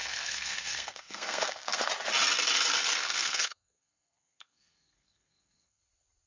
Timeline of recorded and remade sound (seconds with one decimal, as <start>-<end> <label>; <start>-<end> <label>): 0.0-1.8 remade; 1.8-3.0 recorded; 3.0-5.8 remade; 5.8-6.3 recorded